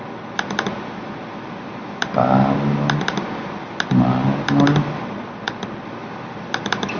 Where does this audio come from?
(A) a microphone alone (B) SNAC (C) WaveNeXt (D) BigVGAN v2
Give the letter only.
A